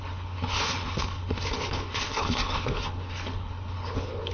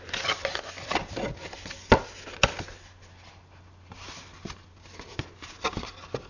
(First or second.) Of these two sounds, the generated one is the first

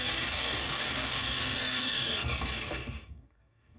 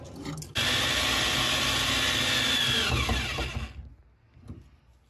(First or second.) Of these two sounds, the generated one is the first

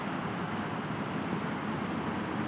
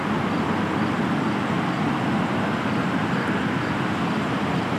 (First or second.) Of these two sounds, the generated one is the first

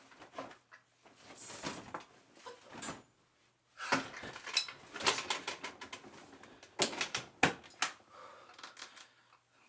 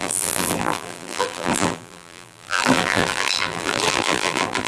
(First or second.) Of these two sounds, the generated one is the second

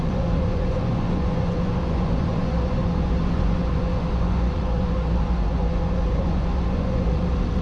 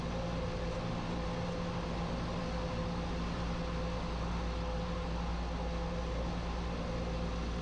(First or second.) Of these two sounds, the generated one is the first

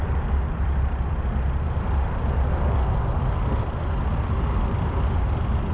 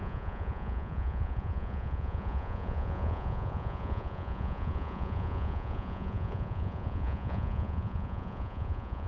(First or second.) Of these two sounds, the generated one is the second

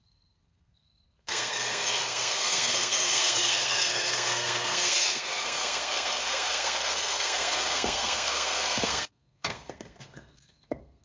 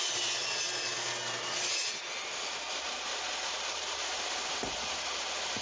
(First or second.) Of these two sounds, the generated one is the first